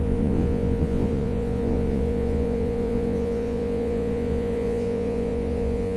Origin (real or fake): fake